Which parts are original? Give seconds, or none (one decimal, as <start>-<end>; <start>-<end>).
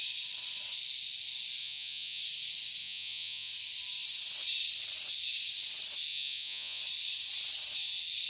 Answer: 0.0-1.6; 2.2-2.8; 3.5-6.1; 6.8-8.3